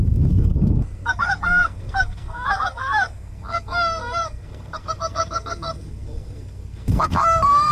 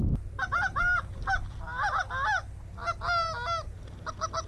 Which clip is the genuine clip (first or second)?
second